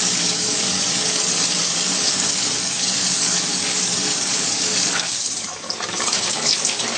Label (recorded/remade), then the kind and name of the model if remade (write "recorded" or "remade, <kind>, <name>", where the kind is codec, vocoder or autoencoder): remade, codec, DAC